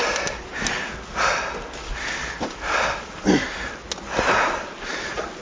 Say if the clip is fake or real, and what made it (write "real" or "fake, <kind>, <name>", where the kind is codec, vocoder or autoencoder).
real